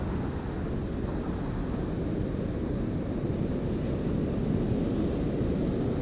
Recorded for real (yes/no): yes